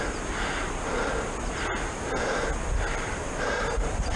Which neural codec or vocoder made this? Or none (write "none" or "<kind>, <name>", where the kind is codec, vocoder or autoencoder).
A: none